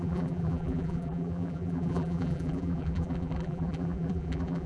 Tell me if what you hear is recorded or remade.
remade